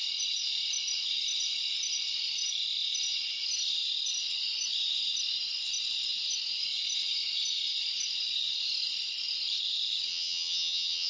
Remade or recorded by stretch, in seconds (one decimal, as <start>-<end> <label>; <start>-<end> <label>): 0.0-10.1 recorded; 10.1-11.1 remade